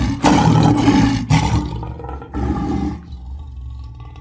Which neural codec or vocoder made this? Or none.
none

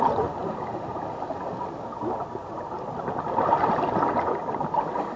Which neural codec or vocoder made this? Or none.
none